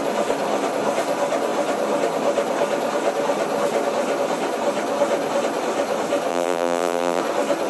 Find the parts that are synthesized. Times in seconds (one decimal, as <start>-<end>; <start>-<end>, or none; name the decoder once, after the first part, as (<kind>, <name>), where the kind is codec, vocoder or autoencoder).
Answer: 6.3-7.2 (vocoder, BigVGAN v2)